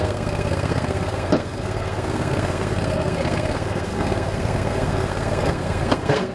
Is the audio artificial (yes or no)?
yes